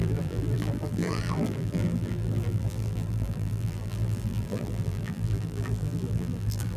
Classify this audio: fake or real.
fake